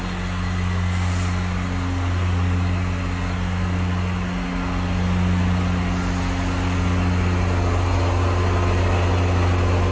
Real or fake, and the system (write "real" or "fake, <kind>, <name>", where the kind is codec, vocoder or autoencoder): real